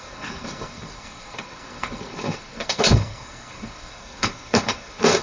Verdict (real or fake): fake